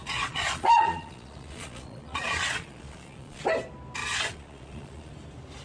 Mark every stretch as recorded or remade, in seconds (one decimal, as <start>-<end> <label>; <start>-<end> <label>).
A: 0.0-3.4 remade; 3.4-4.0 recorded; 4.0-5.1 remade; 5.1-5.6 recorded